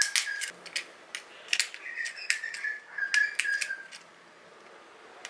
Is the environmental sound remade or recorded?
recorded